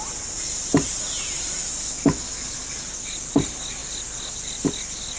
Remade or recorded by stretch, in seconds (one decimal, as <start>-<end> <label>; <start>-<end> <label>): 0.0-1.7 recorded; 1.7-2.7 remade; 2.7-5.2 recorded